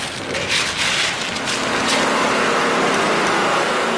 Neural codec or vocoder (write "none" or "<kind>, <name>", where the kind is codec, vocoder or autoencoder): none